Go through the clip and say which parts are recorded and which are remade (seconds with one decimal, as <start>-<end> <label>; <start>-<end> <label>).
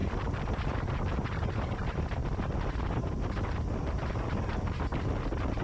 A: 0.0-5.6 recorded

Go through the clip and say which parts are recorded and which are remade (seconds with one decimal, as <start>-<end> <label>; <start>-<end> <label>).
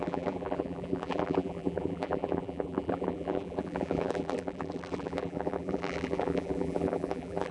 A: 0.0-7.5 remade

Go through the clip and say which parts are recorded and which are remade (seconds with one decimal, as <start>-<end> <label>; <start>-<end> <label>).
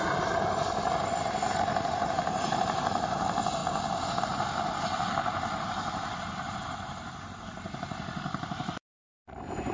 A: 0.0-3.6 remade; 3.6-4.2 recorded; 4.2-9.7 remade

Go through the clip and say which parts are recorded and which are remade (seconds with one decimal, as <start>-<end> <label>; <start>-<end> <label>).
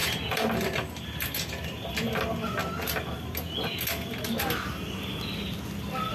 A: 0.0-1.9 remade; 1.9-6.1 recorded